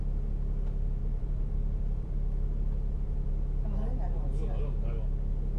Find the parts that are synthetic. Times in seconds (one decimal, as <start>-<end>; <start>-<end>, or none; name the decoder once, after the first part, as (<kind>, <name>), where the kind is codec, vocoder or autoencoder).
1.0-3.3 (vocoder, BigVGAN v2)